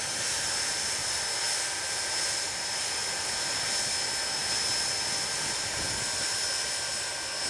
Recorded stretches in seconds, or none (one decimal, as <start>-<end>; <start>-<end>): 0.0-7.5